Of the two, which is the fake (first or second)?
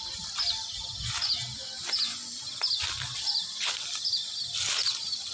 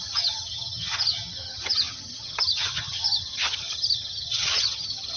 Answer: second